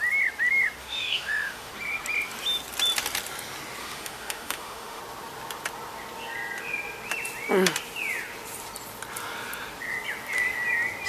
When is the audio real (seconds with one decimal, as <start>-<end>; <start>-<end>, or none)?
0.0-0.8; 1.7-3.8; 5.0-11.1